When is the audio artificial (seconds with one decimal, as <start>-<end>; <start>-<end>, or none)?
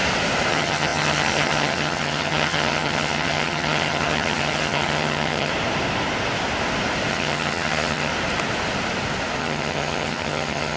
0.5-5.5; 7.1-8.1; 9.4-10.8